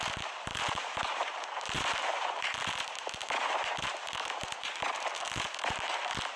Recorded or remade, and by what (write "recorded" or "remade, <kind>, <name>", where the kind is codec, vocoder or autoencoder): remade, vocoder, BigVGAN v2